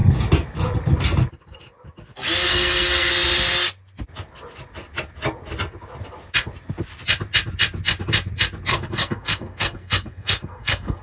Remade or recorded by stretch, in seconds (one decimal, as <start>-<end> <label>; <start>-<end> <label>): 0.0-2.5 recorded; 2.5-3.1 remade; 3.1-8.7 recorded; 8.7-11.0 remade